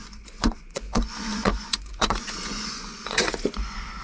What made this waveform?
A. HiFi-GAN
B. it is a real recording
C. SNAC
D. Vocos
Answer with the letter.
D